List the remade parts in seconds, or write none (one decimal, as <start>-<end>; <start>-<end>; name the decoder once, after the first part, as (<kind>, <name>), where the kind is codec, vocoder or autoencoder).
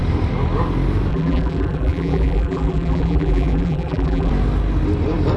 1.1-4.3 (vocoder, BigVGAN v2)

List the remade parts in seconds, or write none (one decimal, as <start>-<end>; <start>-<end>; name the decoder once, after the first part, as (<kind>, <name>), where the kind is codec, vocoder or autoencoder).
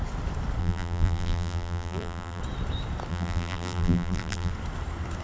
0.6-2.4 (vocoder, BigVGAN v2); 3.1-4.5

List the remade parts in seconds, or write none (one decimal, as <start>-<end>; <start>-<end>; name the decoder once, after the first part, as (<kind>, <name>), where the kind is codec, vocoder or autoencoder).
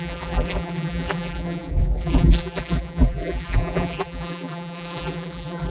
0.0-5.7 (vocoder, BigVGAN v2)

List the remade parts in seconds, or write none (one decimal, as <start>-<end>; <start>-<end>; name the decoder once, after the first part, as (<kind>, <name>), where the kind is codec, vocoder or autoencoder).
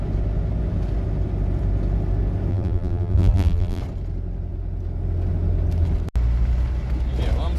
2.5-3.8 (vocoder, BigVGAN v2)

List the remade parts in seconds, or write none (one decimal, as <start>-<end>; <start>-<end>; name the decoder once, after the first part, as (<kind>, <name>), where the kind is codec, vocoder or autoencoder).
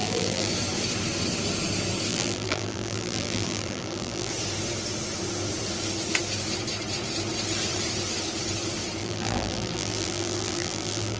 0.0-0.5 (vocoder, BigVGAN v2); 2.1-4.3; 9.0-11.2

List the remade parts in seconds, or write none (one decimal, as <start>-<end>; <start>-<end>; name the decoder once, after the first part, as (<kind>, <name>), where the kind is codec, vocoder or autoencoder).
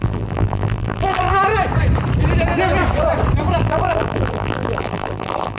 0.0-1.3 (vocoder, BigVGAN v2); 3.6-5.6